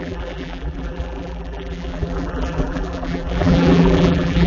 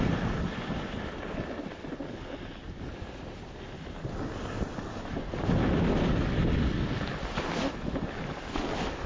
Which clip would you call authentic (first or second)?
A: second